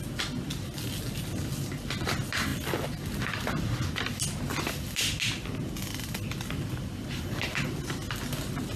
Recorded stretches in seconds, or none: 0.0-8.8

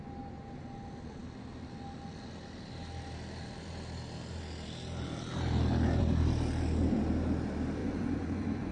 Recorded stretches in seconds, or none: 0.0-7.8